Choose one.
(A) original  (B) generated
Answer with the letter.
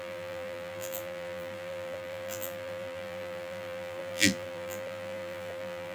B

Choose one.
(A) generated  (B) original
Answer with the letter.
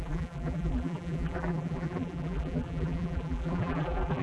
A